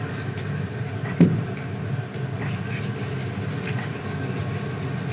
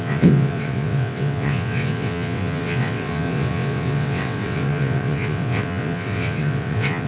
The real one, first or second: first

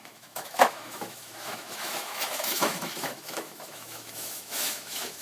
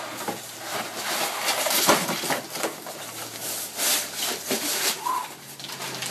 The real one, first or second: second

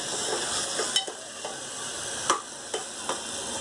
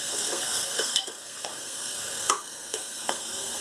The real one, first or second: first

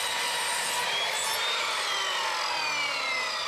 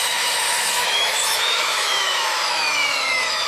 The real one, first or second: first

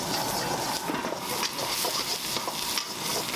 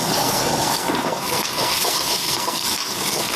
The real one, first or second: first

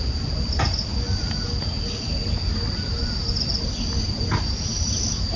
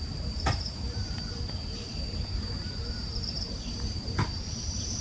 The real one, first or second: first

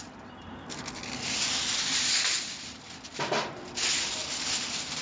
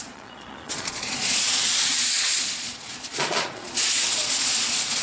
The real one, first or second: first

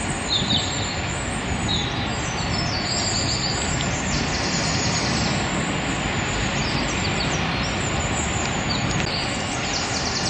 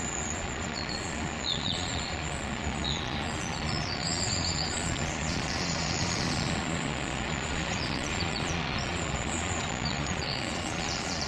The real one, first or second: first